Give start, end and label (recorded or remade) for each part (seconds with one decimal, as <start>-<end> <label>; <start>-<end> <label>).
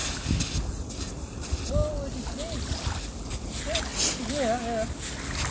0.0-5.5 recorded